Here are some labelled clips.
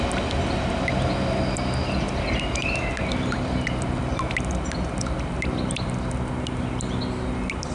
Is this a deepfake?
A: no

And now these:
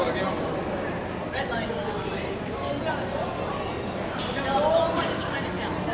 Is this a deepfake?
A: no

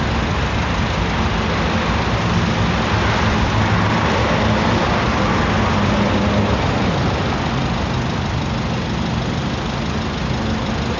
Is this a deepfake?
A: no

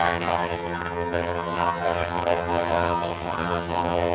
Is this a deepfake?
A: yes